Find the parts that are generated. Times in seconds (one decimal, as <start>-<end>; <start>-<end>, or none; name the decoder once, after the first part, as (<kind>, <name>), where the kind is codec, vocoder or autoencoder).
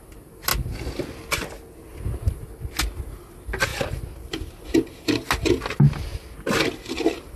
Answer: none